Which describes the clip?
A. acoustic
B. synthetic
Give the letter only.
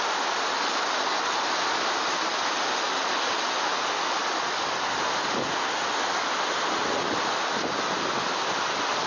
A